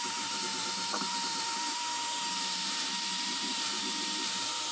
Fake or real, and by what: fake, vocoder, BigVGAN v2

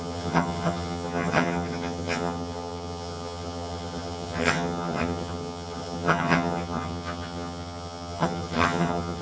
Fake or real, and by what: fake, vocoder, HiFi-GAN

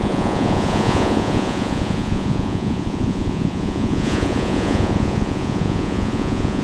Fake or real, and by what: fake, vocoder, Vocos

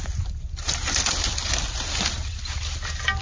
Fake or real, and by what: real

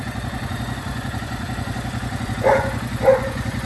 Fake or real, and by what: fake, vocoder, Vocos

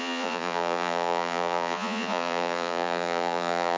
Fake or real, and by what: fake, vocoder, Vocos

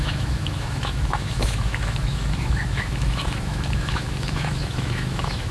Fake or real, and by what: fake, autoencoder, DAC-VAE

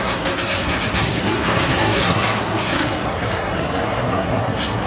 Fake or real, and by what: fake, codec, SNAC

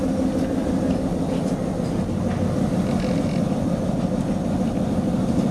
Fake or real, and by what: real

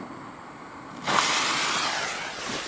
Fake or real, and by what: real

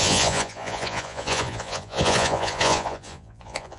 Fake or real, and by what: fake, vocoder, Vocos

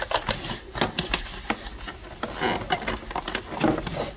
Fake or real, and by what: real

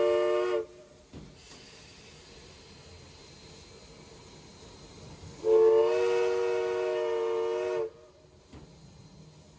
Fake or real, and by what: real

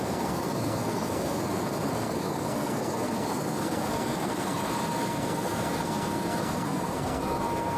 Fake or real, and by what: fake, codec, SNAC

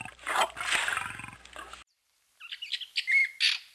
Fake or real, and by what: real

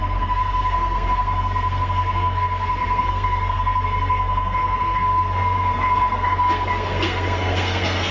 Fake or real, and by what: fake, codec, SNAC